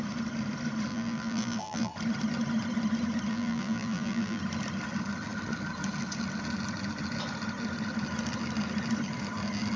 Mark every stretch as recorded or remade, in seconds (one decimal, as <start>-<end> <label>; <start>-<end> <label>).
0.0-0.9 recorded; 0.9-1.9 remade; 1.9-3.3 recorded; 3.3-4.4 remade; 4.4-9.8 recorded